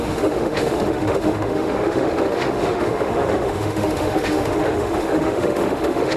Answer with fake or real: fake